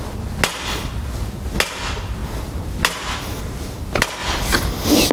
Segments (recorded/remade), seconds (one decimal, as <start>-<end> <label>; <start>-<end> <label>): 0.0-5.1 recorded